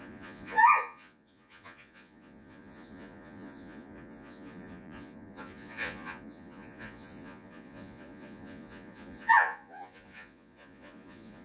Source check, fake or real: fake